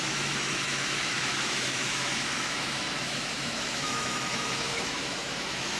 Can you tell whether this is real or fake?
fake